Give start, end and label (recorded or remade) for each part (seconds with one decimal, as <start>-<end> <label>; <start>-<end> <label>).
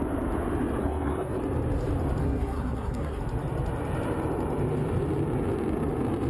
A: 0.0-0.8 recorded; 0.8-1.4 remade; 1.4-2.2 recorded; 2.2-3.2 remade; 3.2-6.3 recorded